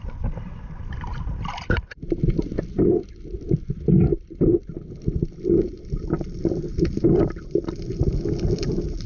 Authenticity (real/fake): fake